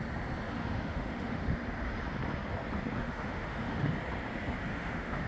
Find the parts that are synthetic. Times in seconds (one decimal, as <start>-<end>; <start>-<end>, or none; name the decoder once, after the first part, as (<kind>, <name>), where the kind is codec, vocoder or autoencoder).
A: 0.6-1.5 (autoencoder, DAC-VAE); 3.0-3.9; 4.7-5.3